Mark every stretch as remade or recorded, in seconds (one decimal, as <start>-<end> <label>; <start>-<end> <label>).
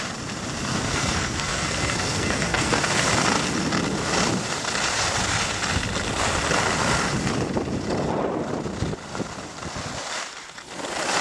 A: 0.0-0.7 recorded; 0.7-2.8 remade; 2.8-11.2 recorded